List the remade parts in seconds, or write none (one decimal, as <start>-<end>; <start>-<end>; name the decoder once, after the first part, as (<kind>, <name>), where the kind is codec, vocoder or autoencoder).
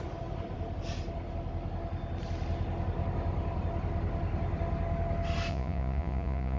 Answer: 5.5-6.6 (vocoder, Vocos)